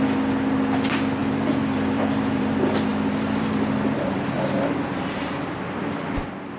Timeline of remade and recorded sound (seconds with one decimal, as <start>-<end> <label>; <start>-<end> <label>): 0.0-1.2 recorded; 1.2-2.5 remade; 2.5-2.9 recorded; 2.9-6.0 remade; 6.0-6.6 recorded